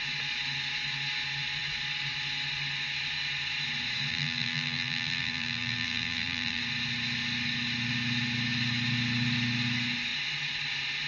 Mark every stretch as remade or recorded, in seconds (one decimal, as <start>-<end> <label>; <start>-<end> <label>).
0.0-4.1 recorded; 4.1-6.6 remade; 6.6-11.1 recorded